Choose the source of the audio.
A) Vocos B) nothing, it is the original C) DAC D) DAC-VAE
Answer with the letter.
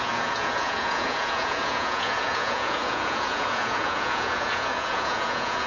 A